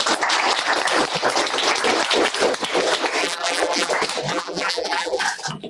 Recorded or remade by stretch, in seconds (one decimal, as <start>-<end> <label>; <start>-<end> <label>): 0.0-3.2 recorded; 3.2-3.9 remade; 3.9-4.3 recorded; 4.3-5.2 remade; 5.2-5.7 recorded